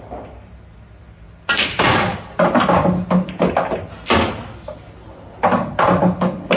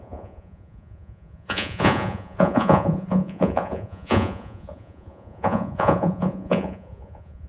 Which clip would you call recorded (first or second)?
first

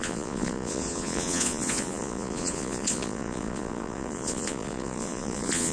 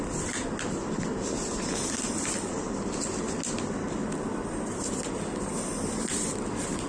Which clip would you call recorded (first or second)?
second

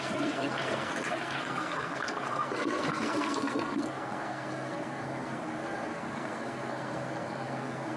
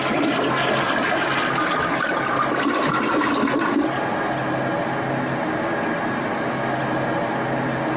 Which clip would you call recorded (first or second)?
second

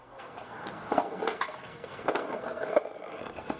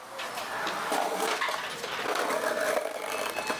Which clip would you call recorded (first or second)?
second